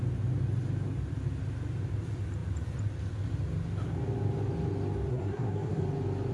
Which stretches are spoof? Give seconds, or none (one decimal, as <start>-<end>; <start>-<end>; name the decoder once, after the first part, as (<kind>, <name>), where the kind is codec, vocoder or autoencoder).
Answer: 5.1-5.8 (codec, SNAC)